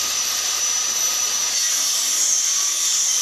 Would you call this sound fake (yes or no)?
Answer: yes